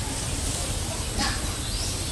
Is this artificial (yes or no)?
no